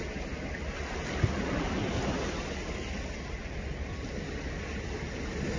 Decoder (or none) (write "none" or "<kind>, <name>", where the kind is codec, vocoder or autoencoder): none